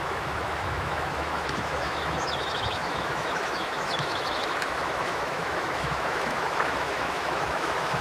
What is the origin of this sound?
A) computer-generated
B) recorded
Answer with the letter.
A